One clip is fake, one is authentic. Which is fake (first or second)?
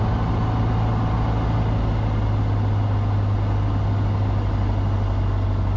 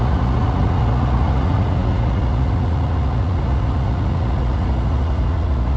second